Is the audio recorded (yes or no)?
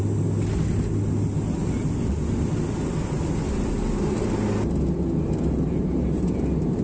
yes